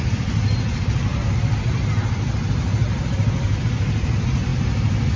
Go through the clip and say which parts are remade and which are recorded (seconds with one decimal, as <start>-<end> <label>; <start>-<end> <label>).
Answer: 0.0-5.2 recorded